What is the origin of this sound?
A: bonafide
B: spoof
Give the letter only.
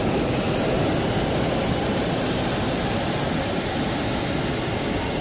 A